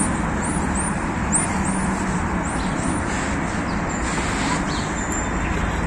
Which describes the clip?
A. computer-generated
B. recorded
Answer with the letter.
B